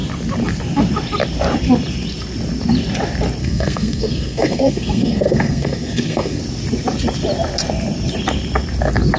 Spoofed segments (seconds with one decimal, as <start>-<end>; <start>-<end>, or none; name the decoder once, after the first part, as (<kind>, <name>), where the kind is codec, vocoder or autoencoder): 3.4-6.4 (codec, SNAC)